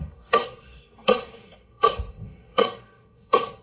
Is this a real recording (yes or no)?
no